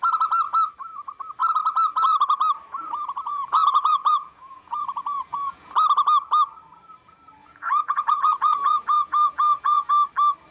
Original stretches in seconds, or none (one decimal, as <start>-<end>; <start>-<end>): 0.0-3.3; 5.7-7.4; 9.9-10.5